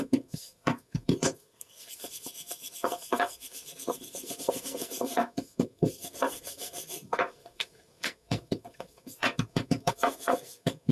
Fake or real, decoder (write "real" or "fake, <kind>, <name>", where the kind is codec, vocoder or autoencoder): fake, codec, SNAC